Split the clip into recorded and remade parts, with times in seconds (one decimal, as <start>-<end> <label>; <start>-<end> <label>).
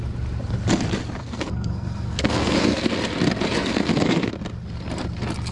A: 0.0-1.2 recorded; 1.2-2.8 remade; 2.8-3.6 recorded; 3.6-4.3 remade; 4.3-5.5 recorded